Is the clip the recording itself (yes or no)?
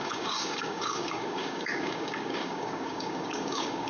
no